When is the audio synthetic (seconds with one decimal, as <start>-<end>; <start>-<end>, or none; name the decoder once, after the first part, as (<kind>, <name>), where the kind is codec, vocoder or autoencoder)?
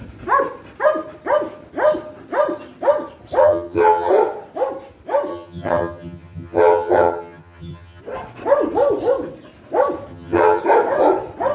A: 3.4-4.1 (vocoder, HiFi-GAN); 5.3-8.0; 10.1-10.6